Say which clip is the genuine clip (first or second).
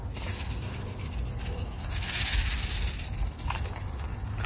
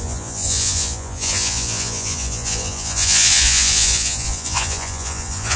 first